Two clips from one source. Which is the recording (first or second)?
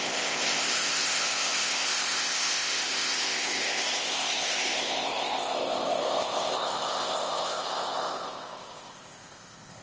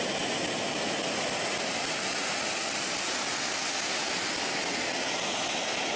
second